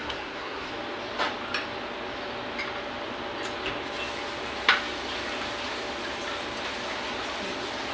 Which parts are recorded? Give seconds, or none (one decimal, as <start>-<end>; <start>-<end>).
0.7-7.9